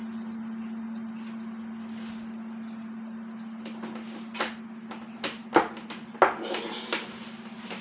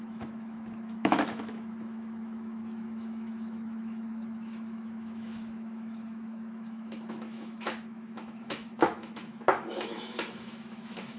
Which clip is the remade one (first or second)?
second